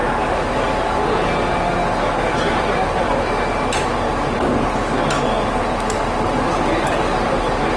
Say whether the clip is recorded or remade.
recorded